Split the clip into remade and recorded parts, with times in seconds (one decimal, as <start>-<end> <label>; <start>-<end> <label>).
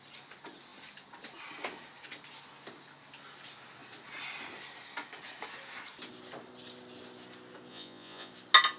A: 0.0-7.7 recorded; 7.7-8.3 remade; 8.3-8.8 recorded